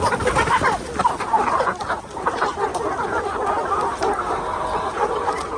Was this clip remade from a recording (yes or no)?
no